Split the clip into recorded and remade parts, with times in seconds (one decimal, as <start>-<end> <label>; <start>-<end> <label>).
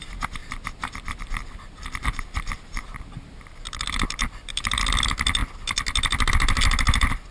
0.0-0.4 recorded; 0.4-4.8 remade; 4.8-7.3 recorded